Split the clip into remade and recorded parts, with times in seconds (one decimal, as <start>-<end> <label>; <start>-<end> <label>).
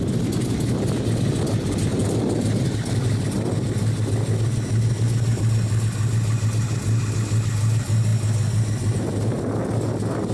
0.0-10.3 recorded